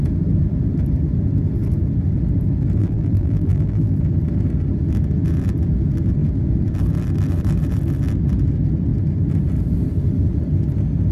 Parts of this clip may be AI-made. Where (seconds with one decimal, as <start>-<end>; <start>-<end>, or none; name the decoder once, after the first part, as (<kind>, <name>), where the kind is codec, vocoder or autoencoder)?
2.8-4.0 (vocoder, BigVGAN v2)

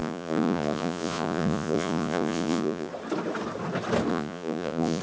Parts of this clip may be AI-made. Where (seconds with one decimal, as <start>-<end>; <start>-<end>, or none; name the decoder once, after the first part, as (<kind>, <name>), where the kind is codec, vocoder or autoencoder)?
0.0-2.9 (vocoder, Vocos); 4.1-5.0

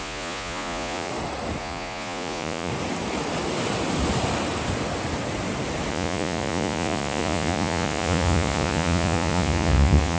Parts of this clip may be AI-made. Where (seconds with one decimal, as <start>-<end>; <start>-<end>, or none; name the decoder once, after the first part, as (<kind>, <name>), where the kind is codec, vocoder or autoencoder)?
0.0-1.1 (vocoder, Vocos); 1.6-2.7; 5.9-10.2

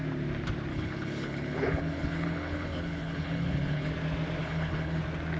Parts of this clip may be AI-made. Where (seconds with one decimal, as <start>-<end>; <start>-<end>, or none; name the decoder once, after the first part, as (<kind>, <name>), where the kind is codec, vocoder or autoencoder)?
0.7-3.9 (codec, HILCodec); 4.4-5.0

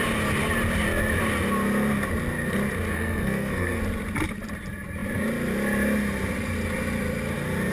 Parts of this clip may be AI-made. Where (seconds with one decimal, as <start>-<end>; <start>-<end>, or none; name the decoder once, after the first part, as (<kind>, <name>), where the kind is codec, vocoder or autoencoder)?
2.9-3.8 (codec, SNAC)

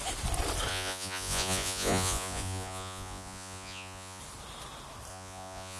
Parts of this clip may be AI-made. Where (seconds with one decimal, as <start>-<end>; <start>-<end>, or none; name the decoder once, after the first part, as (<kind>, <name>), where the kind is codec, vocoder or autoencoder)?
0.7-4.2 (vocoder, Vocos); 5.1-5.8

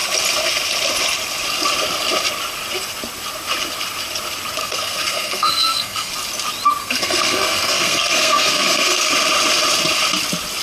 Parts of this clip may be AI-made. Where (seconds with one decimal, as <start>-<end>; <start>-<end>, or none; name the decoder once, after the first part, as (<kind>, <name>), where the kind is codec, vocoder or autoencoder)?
4.6-6.1 (codec, SNAC); 6.8-9.1